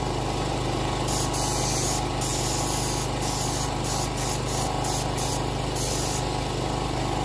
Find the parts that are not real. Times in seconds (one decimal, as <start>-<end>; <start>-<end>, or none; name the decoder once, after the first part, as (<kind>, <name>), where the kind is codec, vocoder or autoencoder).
none